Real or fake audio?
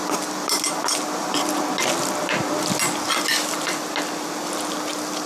real